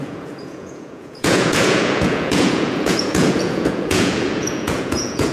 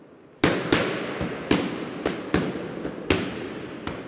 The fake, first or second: first